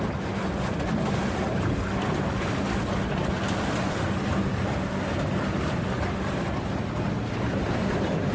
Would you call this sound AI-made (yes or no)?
no